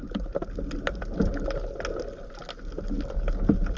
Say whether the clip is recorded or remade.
recorded